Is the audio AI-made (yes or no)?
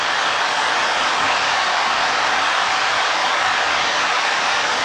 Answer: yes